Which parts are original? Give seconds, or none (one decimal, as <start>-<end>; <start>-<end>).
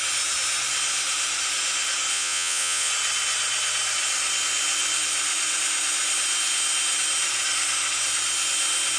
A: 0.0-2.1; 2.9-9.0